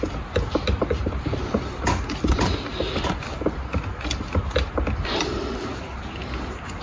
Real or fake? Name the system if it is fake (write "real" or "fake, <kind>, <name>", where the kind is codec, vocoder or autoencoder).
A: real